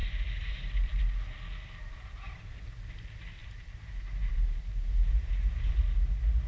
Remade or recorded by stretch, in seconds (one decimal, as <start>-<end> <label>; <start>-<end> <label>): 0.0-1.0 remade; 1.0-3.4 recorded; 3.4-5.8 remade; 5.8-6.5 recorded